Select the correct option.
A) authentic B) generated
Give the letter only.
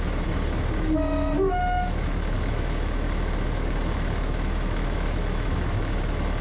B